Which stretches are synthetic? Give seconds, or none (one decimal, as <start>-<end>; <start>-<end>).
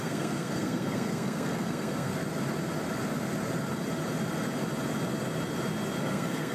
0.0-2.1; 6.0-6.5